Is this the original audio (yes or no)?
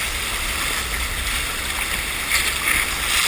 yes